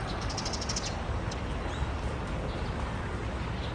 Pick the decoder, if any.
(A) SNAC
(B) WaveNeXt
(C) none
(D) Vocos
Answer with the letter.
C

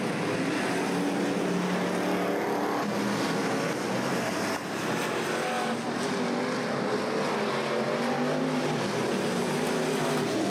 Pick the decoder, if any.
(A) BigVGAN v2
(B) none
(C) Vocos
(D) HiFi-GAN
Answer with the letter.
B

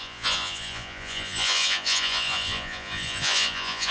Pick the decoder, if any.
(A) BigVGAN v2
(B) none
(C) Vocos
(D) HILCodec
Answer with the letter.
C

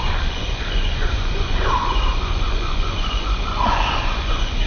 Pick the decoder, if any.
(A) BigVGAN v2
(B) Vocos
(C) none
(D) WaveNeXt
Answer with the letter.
B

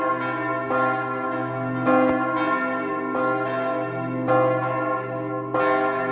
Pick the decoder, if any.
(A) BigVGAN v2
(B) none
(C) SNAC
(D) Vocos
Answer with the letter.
B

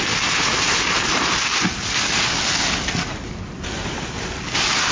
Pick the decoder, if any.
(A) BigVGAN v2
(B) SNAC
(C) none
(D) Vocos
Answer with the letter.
C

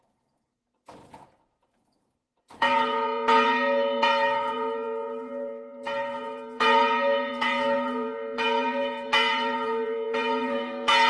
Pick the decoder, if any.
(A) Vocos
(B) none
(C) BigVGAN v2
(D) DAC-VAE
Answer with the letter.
A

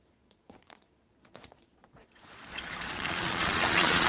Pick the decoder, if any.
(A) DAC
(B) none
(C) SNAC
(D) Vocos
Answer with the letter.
D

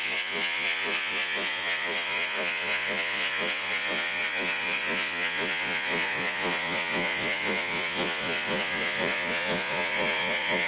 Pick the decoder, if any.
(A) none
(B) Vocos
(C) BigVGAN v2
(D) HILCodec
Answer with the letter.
B